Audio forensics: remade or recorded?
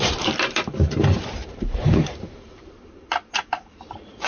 remade